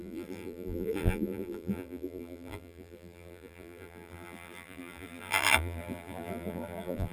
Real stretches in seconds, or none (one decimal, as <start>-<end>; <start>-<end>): none